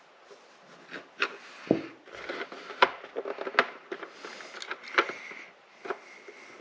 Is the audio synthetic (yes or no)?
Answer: no